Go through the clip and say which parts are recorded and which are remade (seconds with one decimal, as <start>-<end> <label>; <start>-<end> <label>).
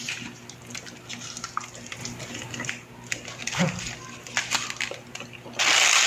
0.0-6.1 recorded